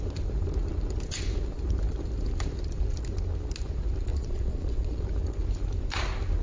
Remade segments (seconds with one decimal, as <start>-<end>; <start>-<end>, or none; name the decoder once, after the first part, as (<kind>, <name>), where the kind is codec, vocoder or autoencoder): 4.1-5.0 (vocoder, Vocos)